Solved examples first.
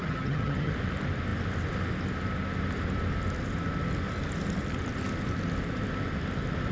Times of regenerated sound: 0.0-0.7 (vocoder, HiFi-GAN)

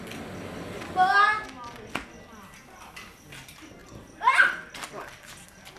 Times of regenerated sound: none

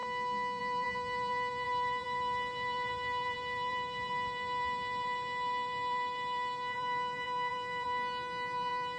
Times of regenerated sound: 0.6-9.0 (vocoder, BigVGAN v2)